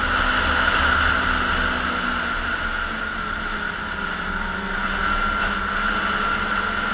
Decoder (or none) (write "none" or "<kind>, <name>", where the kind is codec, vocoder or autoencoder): none